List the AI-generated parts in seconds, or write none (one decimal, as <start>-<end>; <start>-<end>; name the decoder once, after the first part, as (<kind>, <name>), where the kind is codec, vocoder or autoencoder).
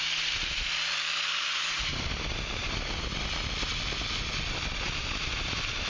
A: 0.0-5.9 (vocoder, BigVGAN v2)